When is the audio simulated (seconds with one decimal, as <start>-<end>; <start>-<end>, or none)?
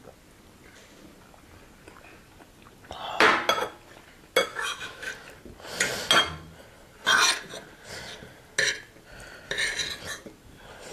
4.5-5.1